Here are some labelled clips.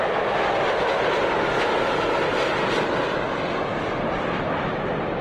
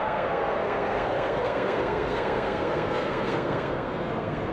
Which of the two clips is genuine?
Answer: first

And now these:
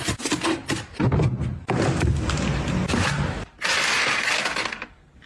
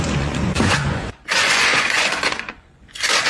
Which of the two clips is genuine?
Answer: first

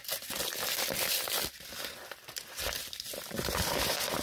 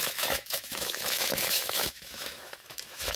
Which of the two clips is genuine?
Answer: first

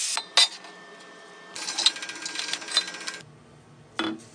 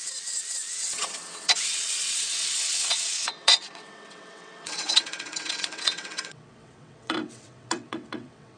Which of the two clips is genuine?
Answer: first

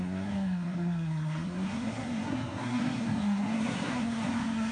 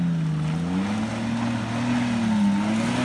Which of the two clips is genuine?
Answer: second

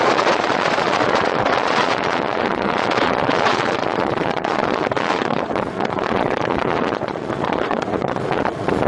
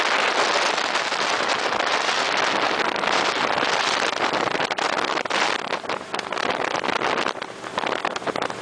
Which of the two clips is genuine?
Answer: second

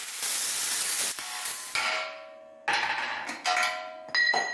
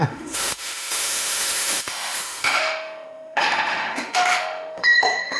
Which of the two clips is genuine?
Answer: first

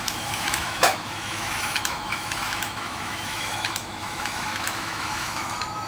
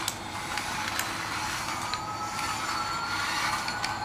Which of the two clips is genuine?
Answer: second